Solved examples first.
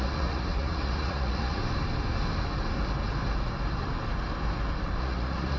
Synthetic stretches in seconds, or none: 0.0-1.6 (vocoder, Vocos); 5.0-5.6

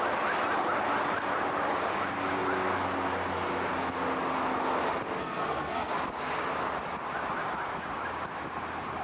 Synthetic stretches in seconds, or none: 5.2-5.9 (codec, SNAC)

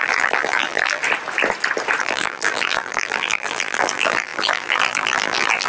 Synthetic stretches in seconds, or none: 0.0-1.0 (vocoder, BigVGAN v2); 2.0-5.7

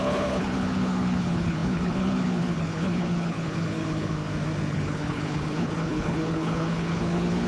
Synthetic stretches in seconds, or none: 0.0-4.2 (codec, HILCodec); 4.7-7.5

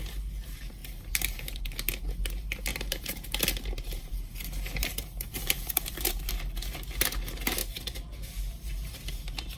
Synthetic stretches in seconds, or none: 0.8-1.6 (vocoder, BigVGAN v2); 2.7-6.3

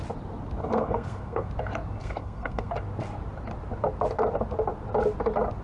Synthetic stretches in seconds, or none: 0.6-1.5 (codec, SNAC); 2.0-2.7

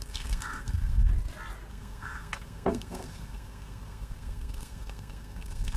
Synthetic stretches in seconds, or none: 0.0-1.1 (codec, SNAC); 1.7-5.8

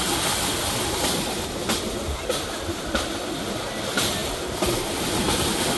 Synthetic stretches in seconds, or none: none